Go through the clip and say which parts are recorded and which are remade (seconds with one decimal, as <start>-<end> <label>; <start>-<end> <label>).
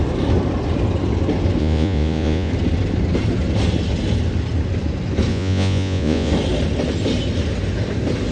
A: 0.0-1.6 recorded; 1.6-2.5 remade; 2.5-5.3 recorded; 5.3-6.3 remade; 6.3-8.3 recorded